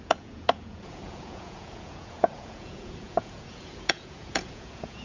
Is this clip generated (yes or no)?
yes